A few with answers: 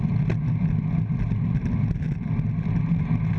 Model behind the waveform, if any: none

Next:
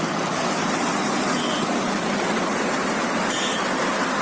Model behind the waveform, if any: none